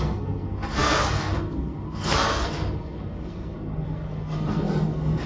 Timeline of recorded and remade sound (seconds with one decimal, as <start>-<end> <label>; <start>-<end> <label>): 0.0-5.3 remade